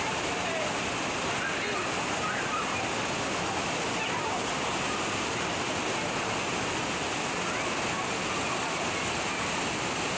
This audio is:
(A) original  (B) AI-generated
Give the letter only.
A